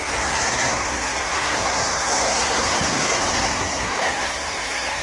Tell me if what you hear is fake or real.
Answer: fake